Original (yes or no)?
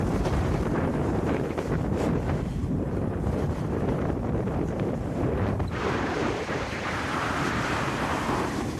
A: no